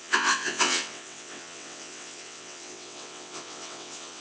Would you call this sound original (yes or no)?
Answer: no